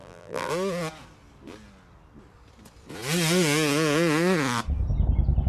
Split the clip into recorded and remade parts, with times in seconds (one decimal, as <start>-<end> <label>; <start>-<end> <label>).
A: 0.0-0.5 remade; 0.5-5.5 recorded